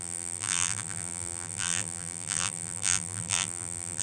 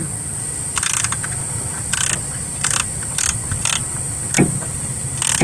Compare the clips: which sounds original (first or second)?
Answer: second